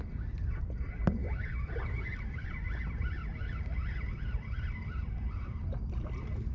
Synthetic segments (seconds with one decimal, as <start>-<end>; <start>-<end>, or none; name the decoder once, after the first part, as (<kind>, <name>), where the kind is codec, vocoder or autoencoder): none